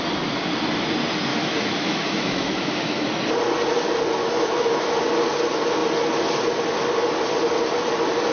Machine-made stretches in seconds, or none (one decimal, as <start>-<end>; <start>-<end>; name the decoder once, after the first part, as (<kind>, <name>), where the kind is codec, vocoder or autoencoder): 1.3-3.1 (autoencoder, DAC-VAE); 4.2-4.9